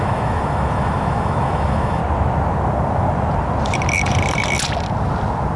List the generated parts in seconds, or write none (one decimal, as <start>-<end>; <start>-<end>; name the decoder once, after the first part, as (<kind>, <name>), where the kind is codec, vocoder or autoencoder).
0.0-2.0 (autoencoder, DAC-VAE)

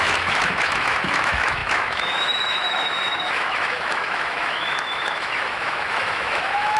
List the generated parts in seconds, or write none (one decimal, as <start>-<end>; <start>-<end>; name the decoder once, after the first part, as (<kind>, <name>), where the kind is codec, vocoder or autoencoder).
0.0-6.8 (autoencoder, DAC-VAE)